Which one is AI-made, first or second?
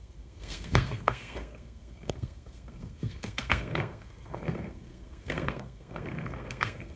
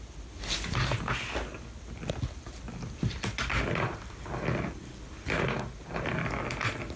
first